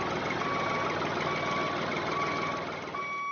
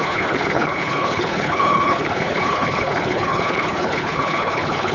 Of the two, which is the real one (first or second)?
first